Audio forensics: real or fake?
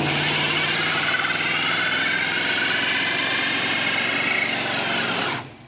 real